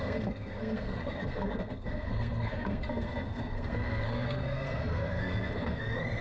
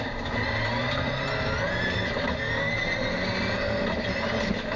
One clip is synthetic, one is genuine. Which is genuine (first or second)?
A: second